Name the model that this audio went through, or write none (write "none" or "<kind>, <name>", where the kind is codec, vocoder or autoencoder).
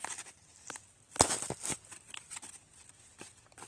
none